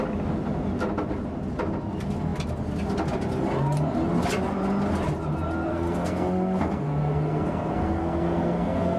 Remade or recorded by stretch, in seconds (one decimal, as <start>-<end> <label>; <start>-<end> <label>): 0.0-5.7 recorded; 5.7-9.0 remade